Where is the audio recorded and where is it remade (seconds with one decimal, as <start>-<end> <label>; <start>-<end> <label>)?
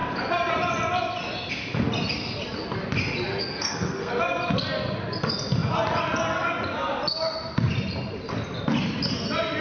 0.0-3.4 recorded; 3.4-4.1 remade; 4.1-9.6 recorded